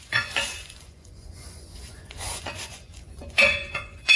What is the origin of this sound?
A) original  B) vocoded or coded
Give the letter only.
B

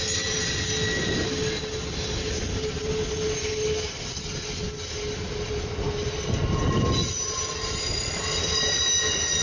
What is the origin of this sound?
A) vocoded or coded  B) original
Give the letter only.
B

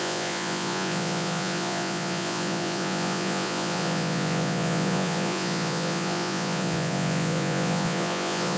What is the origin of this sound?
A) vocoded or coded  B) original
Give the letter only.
A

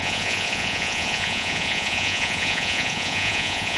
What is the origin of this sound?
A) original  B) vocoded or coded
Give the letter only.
B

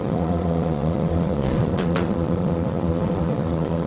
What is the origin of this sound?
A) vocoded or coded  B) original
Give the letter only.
A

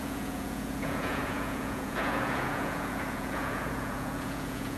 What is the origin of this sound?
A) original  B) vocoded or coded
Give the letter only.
B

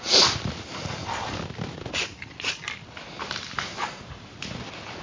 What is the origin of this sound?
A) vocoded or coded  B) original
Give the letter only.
B